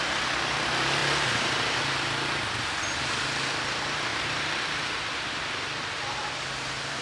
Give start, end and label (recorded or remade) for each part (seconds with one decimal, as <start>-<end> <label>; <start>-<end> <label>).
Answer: 0.0-1.0 recorded; 1.0-1.8 remade; 1.8-4.1 recorded; 4.1-5.3 remade; 5.3-7.0 recorded